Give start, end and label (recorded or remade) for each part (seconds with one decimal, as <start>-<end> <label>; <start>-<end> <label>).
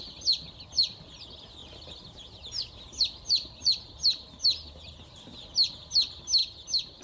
0.0-7.0 recorded